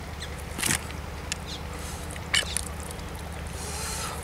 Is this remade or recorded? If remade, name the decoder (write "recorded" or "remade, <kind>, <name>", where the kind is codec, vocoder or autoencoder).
recorded